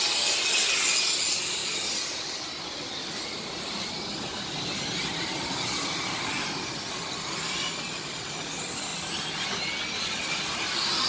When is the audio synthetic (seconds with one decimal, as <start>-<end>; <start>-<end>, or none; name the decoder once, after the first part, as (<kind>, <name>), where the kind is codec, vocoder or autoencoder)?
none